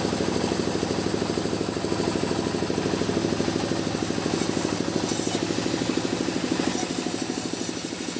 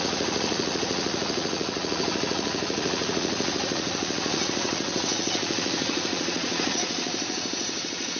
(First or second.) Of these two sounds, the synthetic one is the second